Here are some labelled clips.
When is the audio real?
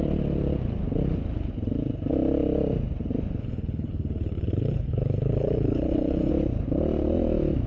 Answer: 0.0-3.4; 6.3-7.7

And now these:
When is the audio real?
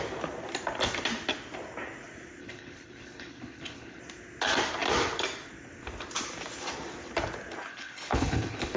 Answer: 0.0-2.4; 4.0-7.7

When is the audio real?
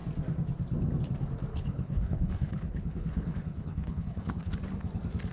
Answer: 0.0-1.5; 4.5-5.3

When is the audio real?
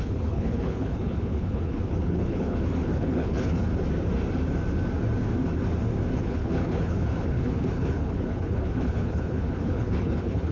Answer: 3.7-6.2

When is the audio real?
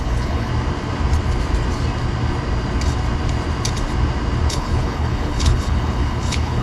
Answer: 0.5-4.5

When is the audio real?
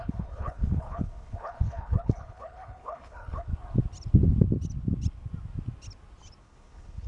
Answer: 3.5-6.4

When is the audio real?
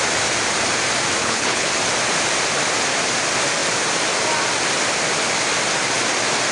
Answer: 0.0-1.2; 1.7-6.5